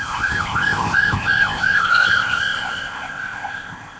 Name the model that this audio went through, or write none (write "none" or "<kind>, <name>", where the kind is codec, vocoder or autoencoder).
codec, ZipCodec